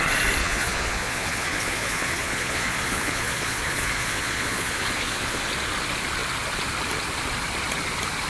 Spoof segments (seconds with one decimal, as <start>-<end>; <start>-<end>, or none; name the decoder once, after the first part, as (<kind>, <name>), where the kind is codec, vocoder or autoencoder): 0.4-5.4 (vocoder, Vocos)